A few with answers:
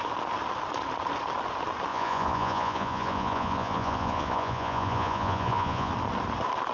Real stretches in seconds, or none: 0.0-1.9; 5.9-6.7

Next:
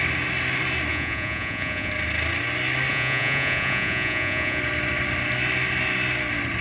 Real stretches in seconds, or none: 0.0-0.9; 1.9-2.9; 4.6-6.6

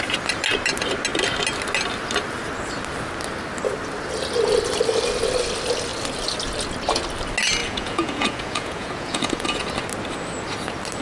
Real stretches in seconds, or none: 0.0-7.6; 9.7-11.0

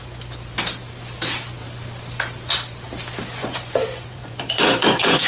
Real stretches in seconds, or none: 0.0-3.4

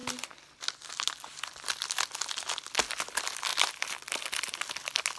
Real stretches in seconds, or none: 0.0-5.2

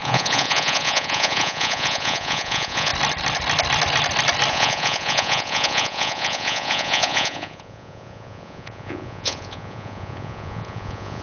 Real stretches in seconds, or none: 2.9-4.5

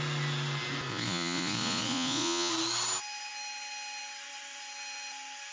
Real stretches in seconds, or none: 0.0-0.9; 2.5-5.5

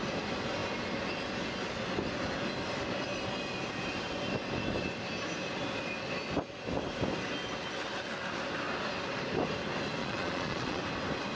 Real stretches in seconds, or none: 0.0-10.0; 10.8-11.4